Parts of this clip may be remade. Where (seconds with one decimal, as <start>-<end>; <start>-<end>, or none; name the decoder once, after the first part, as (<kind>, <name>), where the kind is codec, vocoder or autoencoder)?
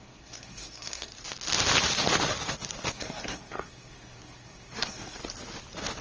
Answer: 0.0-1.1 (codec, SNAC); 2.9-5.2